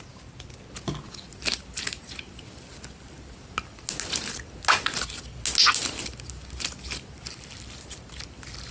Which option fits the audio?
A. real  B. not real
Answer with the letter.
A